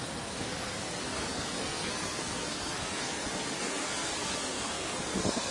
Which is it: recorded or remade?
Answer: remade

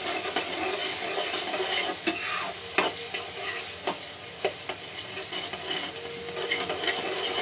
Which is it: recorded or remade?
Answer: recorded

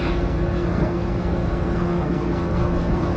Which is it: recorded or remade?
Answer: remade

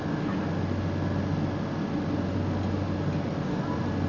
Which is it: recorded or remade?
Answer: recorded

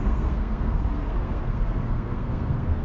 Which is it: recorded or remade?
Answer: remade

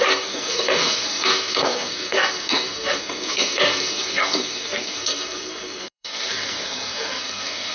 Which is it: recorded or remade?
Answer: remade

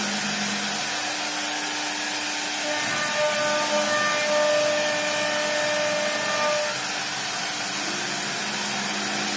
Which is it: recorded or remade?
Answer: recorded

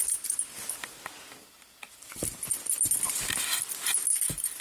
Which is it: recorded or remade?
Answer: recorded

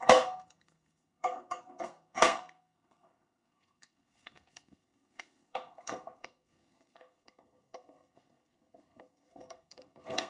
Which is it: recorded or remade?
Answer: remade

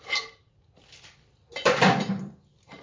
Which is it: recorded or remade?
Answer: recorded